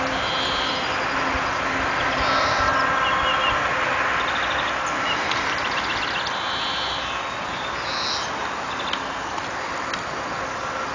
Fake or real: real